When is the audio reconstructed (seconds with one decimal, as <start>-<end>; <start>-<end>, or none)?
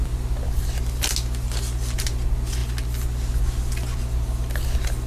none